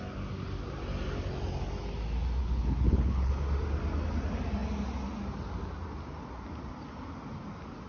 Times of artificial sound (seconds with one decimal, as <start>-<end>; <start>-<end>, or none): 2.4-3.3